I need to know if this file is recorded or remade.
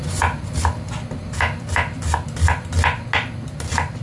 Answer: recorded